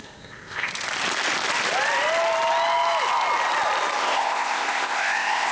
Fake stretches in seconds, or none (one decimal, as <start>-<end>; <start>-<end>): 0.0-0.7; 4.0-5.5